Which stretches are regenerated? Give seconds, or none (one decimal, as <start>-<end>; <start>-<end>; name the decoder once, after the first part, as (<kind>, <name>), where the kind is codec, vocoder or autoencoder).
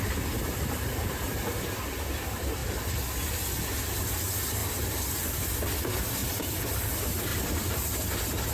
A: 6.2-6.8 (vocoder, BigVGAN v2); 7.3-7.9